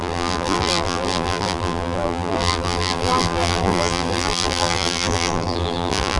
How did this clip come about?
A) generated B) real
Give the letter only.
A